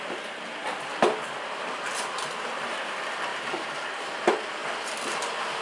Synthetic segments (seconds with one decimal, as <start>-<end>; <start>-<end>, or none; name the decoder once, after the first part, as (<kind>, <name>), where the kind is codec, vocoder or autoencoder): 3.3-4.1 (vocoder, BigVGAN v2)